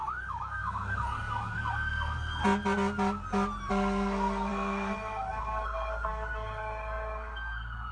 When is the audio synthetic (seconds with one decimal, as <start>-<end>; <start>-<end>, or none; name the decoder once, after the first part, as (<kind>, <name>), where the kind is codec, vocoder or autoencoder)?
0.0-2.4 (codec, SNAC); 3.7-7.9